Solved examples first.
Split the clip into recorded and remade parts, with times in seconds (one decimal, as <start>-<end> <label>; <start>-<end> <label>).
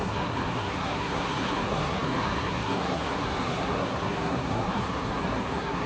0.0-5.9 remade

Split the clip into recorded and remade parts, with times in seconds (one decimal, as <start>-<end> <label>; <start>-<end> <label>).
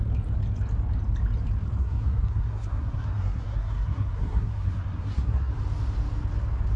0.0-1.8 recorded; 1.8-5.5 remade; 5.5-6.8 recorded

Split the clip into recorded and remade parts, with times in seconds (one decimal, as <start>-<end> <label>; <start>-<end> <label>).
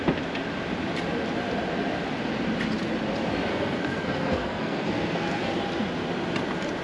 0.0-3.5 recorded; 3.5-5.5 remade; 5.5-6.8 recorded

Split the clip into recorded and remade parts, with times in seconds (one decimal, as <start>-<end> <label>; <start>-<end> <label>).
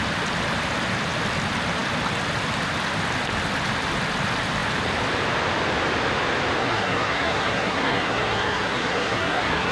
0.0-6.6 recorded; 6.6-9.7 remade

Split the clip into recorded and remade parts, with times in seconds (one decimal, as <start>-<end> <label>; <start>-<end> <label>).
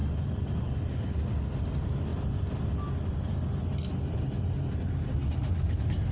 0.0-6.1 recorded